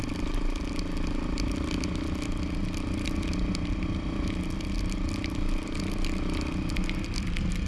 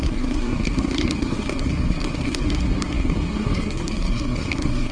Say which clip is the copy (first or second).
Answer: second